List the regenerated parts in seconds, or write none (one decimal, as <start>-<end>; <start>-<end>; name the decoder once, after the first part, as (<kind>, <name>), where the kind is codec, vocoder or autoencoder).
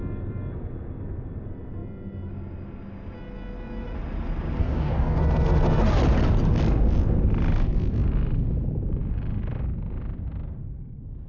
4.6-5.2 (codec, DAC)